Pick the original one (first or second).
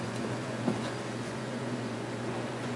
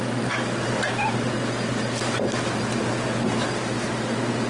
second